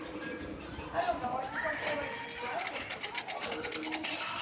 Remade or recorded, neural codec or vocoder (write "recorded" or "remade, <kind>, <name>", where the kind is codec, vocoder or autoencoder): recorded